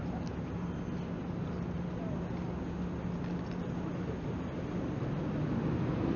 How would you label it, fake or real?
real